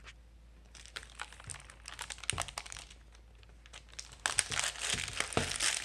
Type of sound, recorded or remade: recorded